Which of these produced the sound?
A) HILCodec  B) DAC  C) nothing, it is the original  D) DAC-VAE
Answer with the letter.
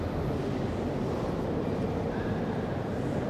C